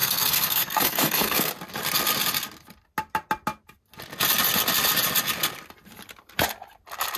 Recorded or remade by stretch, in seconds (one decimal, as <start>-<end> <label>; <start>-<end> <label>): 0.0-1.5 remade; 1.5-7.2 recorded